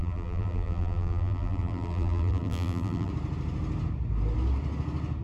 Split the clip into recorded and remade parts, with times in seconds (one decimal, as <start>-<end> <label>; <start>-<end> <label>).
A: 0.0-3.1 remade; 3.1-5.2 recorded